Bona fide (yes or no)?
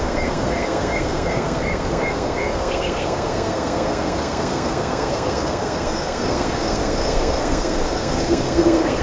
no